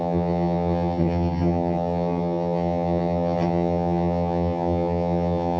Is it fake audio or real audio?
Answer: fake